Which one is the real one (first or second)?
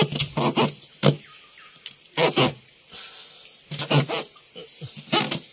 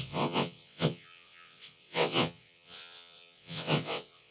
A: first